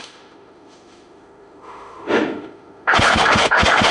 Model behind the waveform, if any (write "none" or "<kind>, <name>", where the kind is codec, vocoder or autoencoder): autoencoder, DAC-VAE